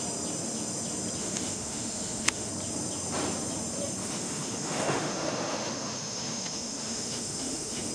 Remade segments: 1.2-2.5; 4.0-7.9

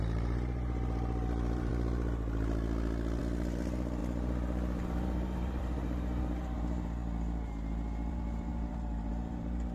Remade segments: 0.0-1.7; 3.2-7.0; 8.1-9.7

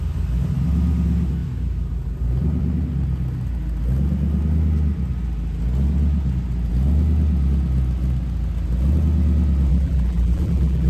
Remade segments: 9.7-10.9

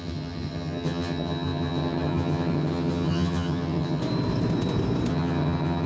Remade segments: 0.0-4.0; 5.1-5.9

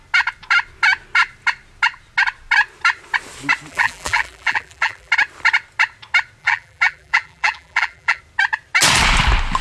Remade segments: 3.7-5.1; 6.4-8.2

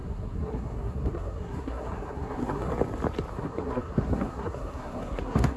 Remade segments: 0.0-2.7; 3.3-5.6